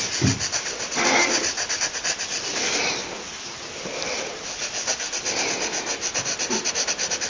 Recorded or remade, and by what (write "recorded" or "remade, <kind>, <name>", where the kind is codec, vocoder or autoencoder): recorded